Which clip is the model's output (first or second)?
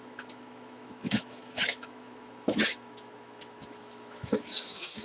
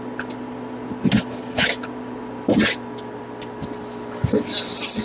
first